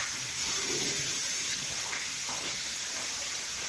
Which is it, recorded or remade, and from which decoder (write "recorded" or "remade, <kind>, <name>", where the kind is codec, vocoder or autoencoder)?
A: remade, vocoder, BigVGAN v2